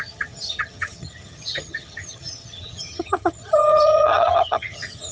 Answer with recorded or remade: remade